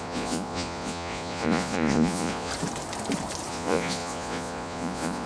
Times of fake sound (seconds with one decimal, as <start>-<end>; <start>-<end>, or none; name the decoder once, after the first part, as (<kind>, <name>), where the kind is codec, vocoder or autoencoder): 0.0-2.5 (vocoder, Vocos); 3.5-5.3